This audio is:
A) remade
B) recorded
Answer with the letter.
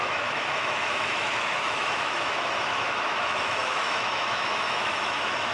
A